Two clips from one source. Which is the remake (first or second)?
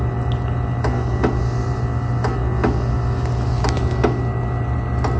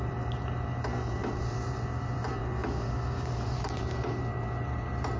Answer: second